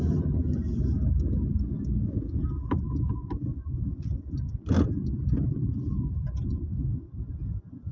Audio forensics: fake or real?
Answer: real